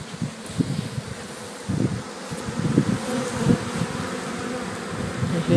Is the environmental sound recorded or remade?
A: recorded